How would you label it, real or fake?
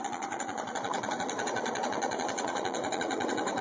fake